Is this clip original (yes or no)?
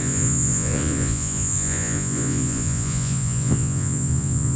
no